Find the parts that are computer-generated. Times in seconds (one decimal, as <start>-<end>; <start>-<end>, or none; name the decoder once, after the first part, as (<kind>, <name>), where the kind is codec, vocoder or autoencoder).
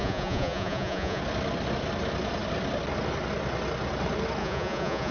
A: 0.0-1.2 (vocoder, Vocos); 4.4-5.1